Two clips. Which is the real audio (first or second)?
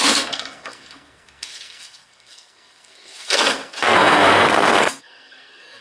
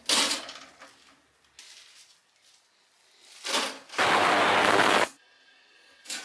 second